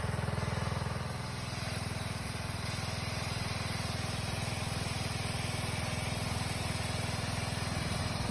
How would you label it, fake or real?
real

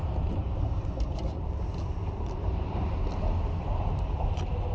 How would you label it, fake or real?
real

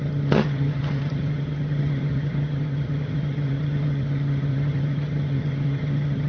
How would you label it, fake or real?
fake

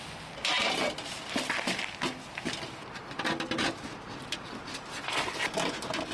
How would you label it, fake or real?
real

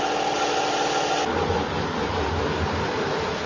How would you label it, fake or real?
real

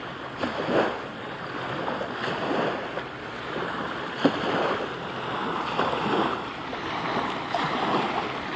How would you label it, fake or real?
real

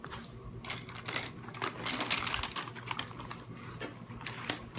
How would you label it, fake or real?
real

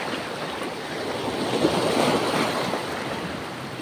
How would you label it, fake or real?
real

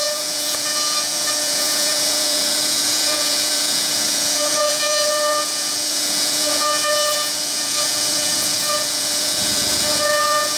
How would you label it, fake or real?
fake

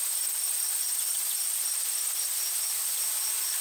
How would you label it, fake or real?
fake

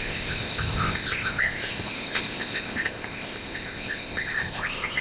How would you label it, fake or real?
fake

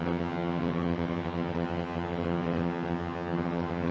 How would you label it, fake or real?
fake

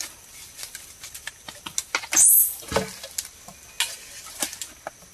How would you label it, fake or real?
real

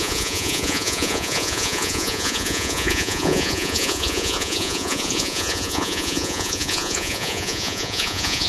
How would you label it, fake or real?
fake